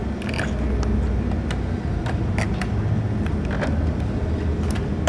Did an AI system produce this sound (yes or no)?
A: no